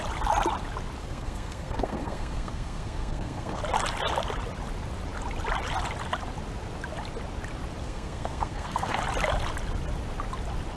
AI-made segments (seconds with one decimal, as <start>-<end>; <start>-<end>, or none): 1.0-3.6; 7.8-9.0

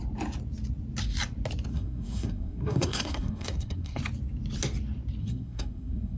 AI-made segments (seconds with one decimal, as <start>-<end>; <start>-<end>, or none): 1.7-4.0; 5.2-6.2

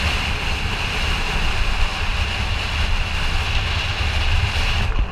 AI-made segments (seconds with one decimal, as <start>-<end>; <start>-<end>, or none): none

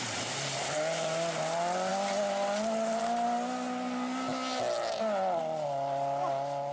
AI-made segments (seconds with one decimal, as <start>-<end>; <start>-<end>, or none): none

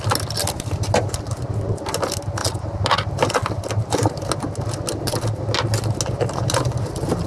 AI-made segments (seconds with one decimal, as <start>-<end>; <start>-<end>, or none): none